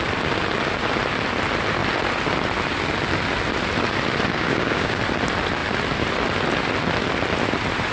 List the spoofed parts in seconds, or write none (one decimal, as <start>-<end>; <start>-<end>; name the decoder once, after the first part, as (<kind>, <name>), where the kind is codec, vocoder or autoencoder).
4.3-5.0 (codec, DAC)